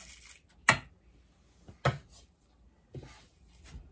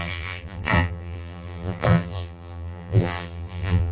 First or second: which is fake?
second